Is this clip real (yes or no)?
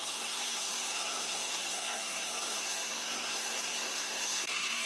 no